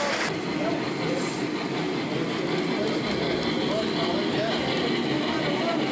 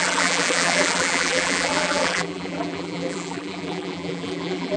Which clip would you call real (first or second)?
first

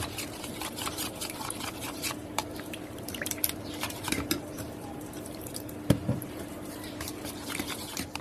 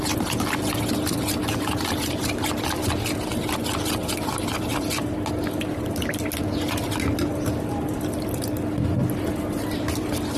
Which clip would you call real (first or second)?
second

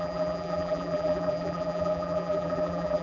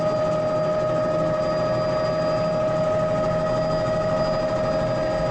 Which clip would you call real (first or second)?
second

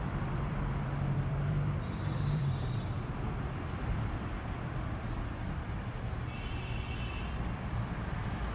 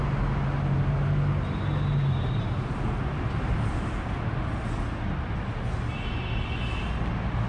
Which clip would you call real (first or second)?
second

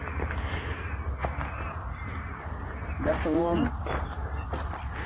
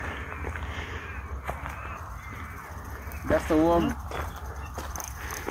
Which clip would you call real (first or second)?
second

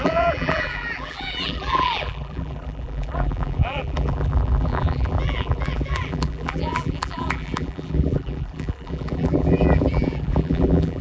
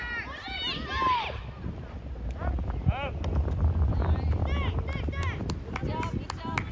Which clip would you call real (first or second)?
second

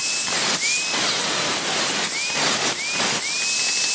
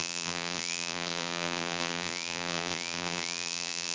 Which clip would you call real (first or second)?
first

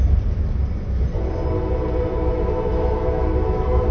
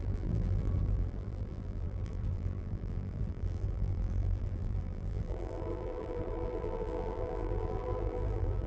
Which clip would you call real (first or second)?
first